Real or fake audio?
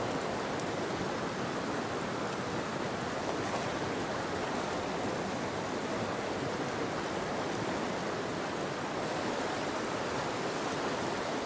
real